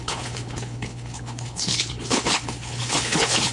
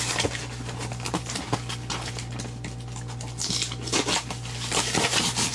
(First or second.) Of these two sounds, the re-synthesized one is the first